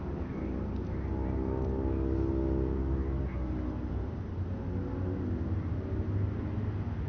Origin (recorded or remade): recorded